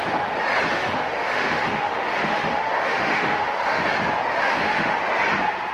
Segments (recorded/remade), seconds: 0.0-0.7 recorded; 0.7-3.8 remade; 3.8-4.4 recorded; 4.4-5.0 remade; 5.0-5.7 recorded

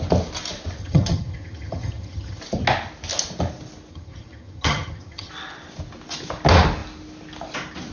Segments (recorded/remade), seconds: 0.0-0.8 recorded; 0.8-2.4 remade; 2.4-3.9 recorded; 3.9-5.3 remade; 5.3-7.9 recorded

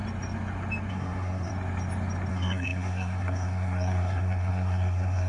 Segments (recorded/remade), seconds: 0.0-0.9 recorded; 0.9-1.5 remade; 1.5-2.3 recorded; 2.3-5.3 remade

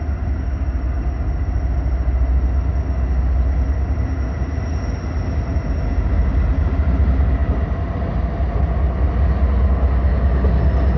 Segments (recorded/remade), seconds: 0.0-11.0 recorded

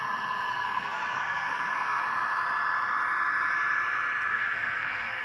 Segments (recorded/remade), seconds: 0.0-0.5 recorded; 0.5-2.0 remade; 2.0-4.3 recorded; 4.3-5.2 remade

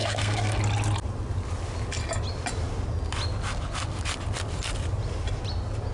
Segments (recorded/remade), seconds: 0.0-0.6 remade; 0.6-5.9 recorded

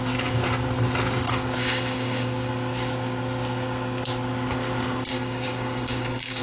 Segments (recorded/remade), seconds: 0.0-1.6 recorded; 1.6-2.5 remade; 2.5-5.1 recorded; 5.1-6.4 remade